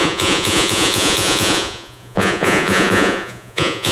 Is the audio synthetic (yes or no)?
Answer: yes